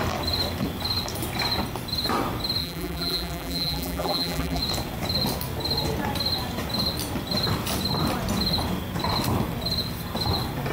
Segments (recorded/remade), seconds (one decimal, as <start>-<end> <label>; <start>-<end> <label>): 0.0-2.6 recorded; 2.6-4.6 remade; 4.6-10.7 recorded